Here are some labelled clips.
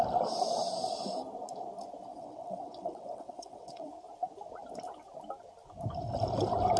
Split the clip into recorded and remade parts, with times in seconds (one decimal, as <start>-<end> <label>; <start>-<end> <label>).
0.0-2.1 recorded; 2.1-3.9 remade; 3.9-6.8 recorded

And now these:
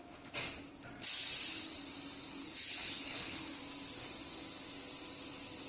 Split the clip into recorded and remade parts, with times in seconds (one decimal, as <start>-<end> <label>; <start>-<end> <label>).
0.0-2.4 recorded; 2.4-3.6 remade; 3.6-5.7 recorded

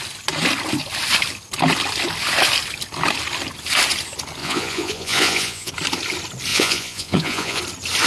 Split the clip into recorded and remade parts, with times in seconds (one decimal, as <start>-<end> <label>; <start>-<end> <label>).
0.0-4.4 recorded; 4.4-5.7 remade; 5.7-6.5 recorded; 6.5-7.6 remade; 7.6-8.1 recorded

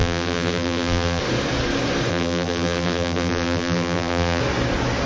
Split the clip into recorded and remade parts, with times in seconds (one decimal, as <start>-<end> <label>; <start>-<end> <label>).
0.0-1.2 remade; 1.2-2.1 recorded; 2.1-4.4 remade; 4.4-5.1 recorded

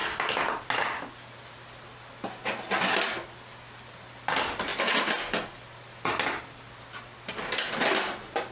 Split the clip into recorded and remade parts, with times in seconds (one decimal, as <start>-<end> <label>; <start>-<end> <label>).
0.0-8.5 recorded

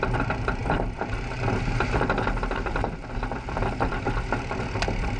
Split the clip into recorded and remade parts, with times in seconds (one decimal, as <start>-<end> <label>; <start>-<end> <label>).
0.0-5.2 recorded

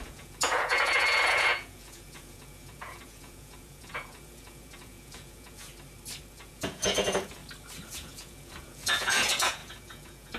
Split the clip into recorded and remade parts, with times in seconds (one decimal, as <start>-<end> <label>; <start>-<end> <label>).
0.0-5.7 remade; 5.7-6.3 recorded; 6.3-7.4 remade; 7.4-7.9 recorded; 7.9-10.4 remade

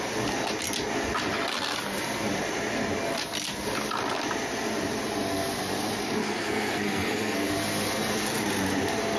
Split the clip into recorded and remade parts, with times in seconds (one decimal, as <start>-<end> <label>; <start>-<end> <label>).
0.0-6.2 recorded; 6.2-7.5 remade; 7.5-9.2 recorded